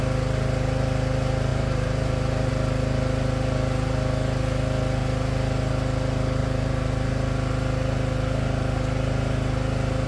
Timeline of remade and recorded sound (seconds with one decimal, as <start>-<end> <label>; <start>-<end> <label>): 0.0-1.5 recorded; 1.5-2.5 remade; 2.5-6.4 recorded; 6.4-7.1 remade; 7.1-10.1 recorded

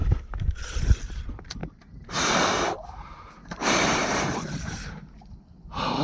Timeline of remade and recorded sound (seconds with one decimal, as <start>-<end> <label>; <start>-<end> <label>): 0.0-1.2 remade; 1.2-1.6 recorded; 1.6-5.2 remade; 5.2-6.0 recorded

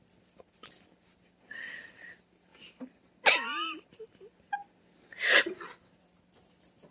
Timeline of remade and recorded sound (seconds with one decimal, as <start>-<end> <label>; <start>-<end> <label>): 0.0-6.9 recorded

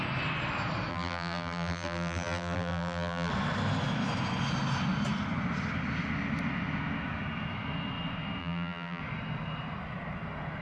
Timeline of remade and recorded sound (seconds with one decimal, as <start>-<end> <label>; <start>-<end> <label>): 0.0-0.9 recorded; 0.9-3.3 remade; 3.3-8.4 recorded; 8.4-9.0 remade; 9.0-10.6 recorded

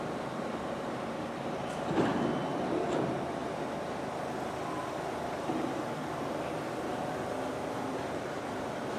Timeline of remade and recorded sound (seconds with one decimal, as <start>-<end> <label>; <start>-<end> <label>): 0.0-2.1 remade; 2.1-2.8 recorded; 2.8-3.4 remade; 3.4-5.2 recorded; 5.2-6.0 remade; 6.0-7.5 recorded; 7.5-9.0 remade

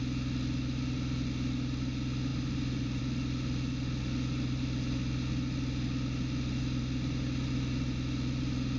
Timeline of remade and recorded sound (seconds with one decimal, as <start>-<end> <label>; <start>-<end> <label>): 0.0-2.3 recorded; 2.3-3.0 remade; 3.0-8.8 recorded

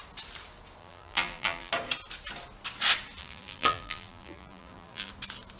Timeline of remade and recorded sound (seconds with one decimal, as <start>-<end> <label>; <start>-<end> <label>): 0.0-0.8 recorded; 0.8-1.7 remade; 1.7-3.2 recorded; 3.2-5.1 remade; 5.1-5.6 recorded

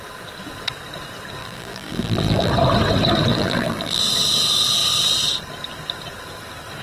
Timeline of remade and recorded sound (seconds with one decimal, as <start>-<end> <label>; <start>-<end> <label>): 0.0-1.4 recorded; 1.4-2.5 remade; 2.5-3.3 recorded; 3.3-4.0 remade; 4.0-6.8 recorded